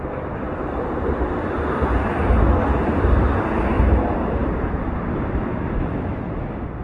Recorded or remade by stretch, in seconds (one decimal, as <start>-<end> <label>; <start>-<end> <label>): 0.0-6.8 recorded